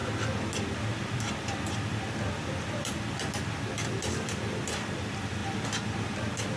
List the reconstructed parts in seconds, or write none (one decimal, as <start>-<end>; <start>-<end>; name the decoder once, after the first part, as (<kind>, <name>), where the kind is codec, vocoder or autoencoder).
0.8-5.4 (vocoder, BigVGAN v2)